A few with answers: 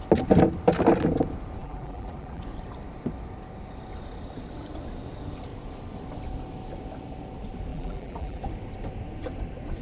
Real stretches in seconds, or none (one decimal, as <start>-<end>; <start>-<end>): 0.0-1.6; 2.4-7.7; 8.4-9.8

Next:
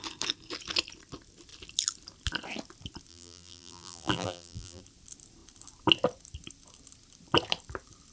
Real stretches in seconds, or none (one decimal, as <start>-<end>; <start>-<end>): 0.0-3.1; 4.8-8.1

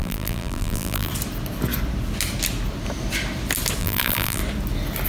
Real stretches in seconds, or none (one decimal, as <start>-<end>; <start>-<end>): 1.1-3.8; 4.4-5.1